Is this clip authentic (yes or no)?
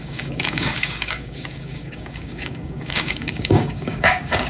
no